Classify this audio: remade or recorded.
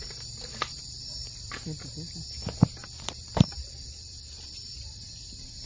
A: remade